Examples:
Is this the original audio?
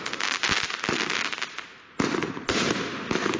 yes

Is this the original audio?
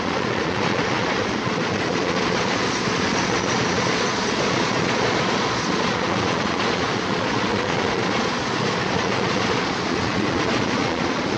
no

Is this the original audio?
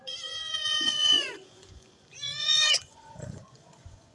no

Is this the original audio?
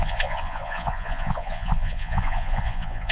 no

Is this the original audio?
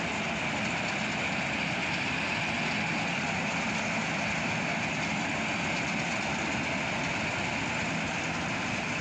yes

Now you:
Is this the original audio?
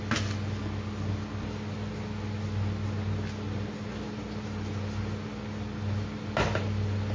yes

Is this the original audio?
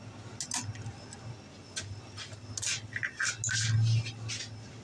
yes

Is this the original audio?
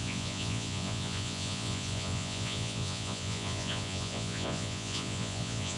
no